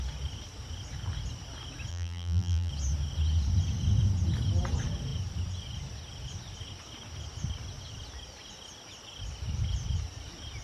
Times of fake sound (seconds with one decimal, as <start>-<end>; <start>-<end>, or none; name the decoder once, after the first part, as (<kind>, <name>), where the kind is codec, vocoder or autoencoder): 1.9-2.7 (vocoder, BigVGAN v2)